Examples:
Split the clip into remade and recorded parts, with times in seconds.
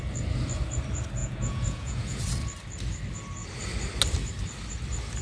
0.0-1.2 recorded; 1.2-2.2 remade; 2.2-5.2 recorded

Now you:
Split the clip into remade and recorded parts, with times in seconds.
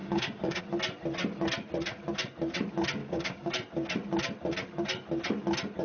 0.0-0.6 remade; 0.6-3.0 recorded; 3.0-3.5 remade; 3.5-5.8 recorded